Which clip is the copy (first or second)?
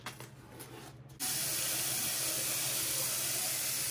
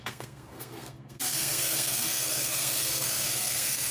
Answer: second